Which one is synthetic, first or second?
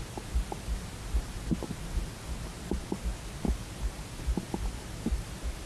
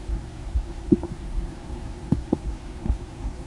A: second